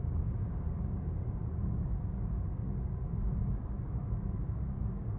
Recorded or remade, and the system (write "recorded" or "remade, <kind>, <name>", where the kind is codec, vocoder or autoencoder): remade, codec, DAC